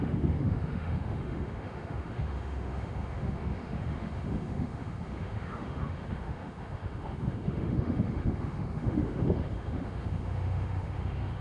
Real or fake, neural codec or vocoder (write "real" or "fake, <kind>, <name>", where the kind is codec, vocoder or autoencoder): fake, autoencoder, DAC-VAE